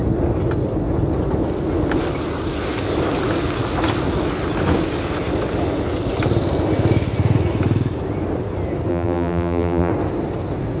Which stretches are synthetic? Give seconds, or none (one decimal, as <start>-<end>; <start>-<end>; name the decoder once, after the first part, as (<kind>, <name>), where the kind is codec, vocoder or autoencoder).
8.9-9.9 (vocoder, BigVGAN v2)